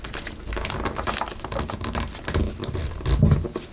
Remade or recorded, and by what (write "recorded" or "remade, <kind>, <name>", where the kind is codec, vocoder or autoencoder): recorded